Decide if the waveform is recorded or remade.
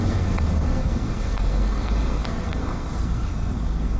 remade